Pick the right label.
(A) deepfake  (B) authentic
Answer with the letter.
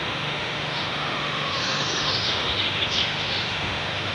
A